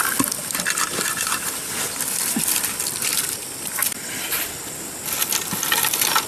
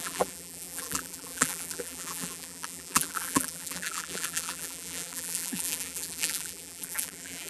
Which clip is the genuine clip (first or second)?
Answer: first